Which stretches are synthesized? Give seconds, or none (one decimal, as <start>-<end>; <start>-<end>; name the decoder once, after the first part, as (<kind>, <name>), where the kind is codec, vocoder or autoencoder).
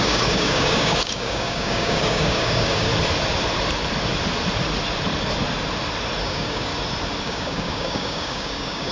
0.0-2.9 (codec, DAC); 6.2-6.7; 7.2-8.9